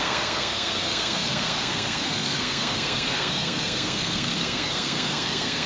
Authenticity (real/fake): fake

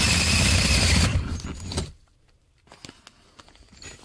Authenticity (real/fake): real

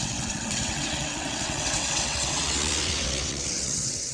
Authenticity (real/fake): fake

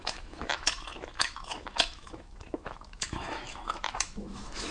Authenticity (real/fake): fake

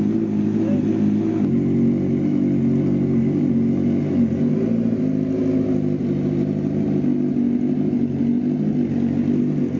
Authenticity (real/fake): real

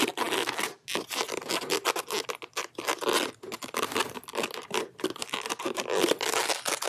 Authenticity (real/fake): real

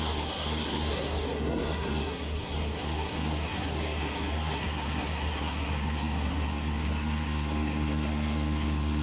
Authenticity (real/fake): fake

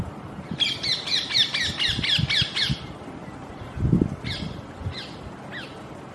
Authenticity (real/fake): real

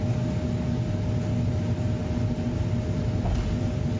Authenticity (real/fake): real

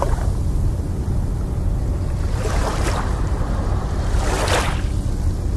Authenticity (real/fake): real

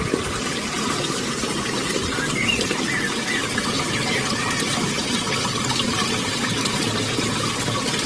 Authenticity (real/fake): fake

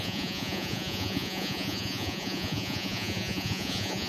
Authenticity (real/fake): fake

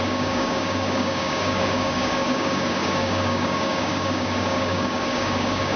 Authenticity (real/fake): fake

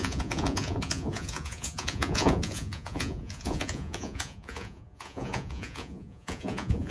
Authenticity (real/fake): fake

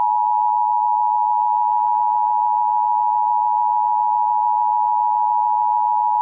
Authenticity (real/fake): real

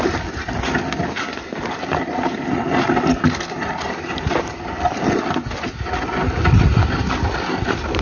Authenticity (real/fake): real